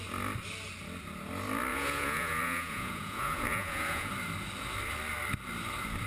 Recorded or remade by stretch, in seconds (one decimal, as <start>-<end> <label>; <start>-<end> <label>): 0.0-1.7 recorded; 1.7-4.1 remade; 4.1-6.1 recorded